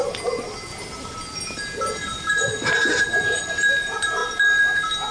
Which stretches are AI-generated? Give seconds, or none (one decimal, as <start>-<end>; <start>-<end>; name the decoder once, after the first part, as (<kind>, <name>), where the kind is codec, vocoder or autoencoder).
none